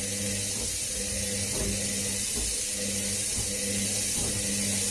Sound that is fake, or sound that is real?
real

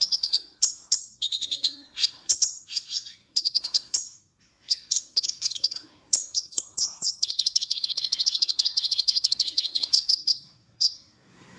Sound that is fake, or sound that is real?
fake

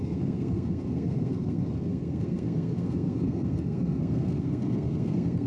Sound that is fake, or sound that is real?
fake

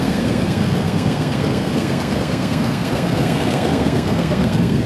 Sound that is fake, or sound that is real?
fake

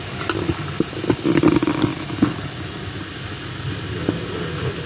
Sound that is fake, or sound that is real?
real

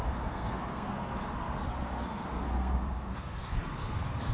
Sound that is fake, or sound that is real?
fake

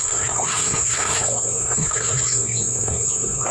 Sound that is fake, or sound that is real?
fake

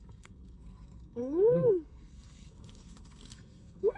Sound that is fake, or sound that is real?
fake